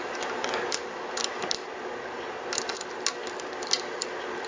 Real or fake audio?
real